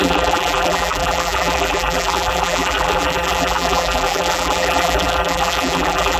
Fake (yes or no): yes